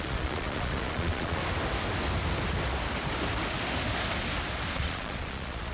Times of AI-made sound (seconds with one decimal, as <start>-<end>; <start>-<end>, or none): 0.0-1.4; 4.7-5.7